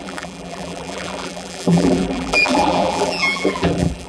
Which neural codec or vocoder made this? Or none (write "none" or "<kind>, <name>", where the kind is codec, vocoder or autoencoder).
vocoder, BigVGAN v2